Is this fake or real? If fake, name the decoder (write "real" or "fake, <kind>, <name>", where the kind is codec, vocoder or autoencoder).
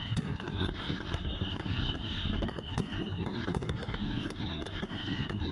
fake, codec, SNAC